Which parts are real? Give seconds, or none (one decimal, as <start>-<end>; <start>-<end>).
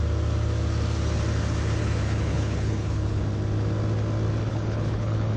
0.0-1.8; 3.2-4.5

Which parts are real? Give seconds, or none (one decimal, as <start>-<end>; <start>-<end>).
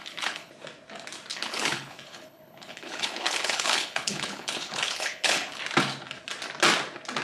0.5-1.3; 5.6-7.2